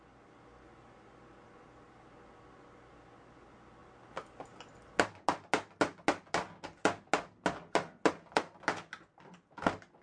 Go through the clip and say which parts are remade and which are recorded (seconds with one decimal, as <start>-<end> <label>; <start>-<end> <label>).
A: 0.0-10.0 recorded